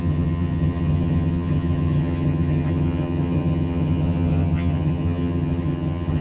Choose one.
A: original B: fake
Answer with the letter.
B